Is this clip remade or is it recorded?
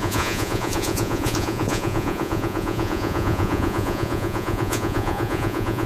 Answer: remade